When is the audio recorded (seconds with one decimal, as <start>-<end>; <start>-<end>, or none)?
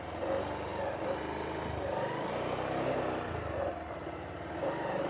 0.0-5.1